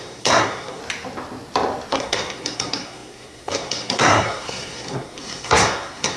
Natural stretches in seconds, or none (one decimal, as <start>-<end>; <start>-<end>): 0.8-1.9